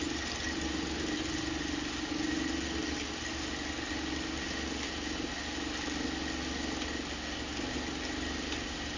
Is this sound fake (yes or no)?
no